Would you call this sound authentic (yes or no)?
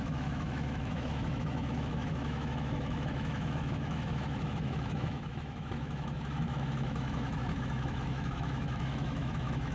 no